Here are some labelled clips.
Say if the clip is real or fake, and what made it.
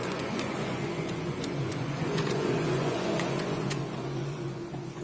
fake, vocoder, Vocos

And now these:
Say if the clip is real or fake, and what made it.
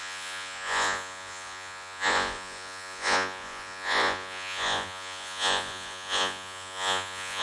fake, vocoder, Vocos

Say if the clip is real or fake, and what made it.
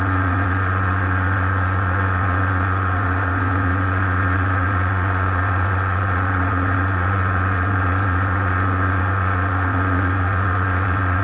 fake, vocoder, Vocos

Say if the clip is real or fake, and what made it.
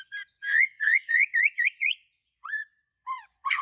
fake, vocoder, Vocos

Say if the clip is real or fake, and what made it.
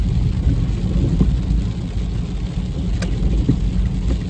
real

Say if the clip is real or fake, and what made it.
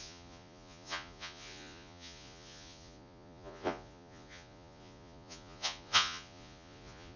fake, vocoder, Vocos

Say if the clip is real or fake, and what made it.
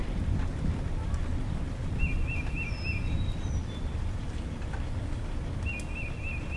real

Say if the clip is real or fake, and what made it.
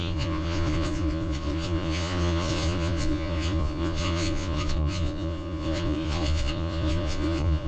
fake, vocoder, Vocos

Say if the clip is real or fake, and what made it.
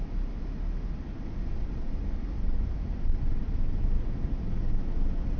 real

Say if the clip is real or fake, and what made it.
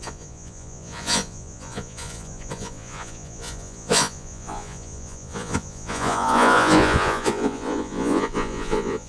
fake, vocoder, Vocos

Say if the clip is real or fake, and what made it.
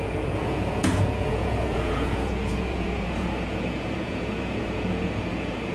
fake, vocoder, Vocos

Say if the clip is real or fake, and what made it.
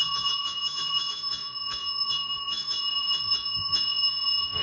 fake, vocoder, Vocos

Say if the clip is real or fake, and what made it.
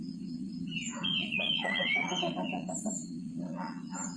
fake, vocoder, Vocos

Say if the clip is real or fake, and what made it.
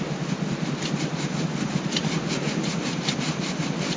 real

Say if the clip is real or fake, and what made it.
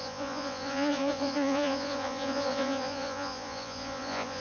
fake, vocoder, Vocos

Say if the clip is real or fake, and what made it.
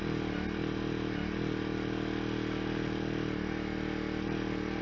real